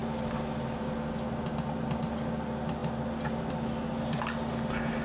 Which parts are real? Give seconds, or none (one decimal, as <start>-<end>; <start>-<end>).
0.0-5.0